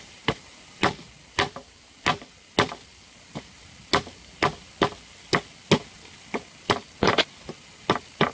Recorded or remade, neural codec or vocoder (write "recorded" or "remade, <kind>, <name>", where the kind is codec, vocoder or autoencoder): recorded